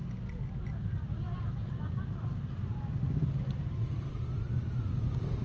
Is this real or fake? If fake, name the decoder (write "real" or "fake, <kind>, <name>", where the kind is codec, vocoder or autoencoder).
real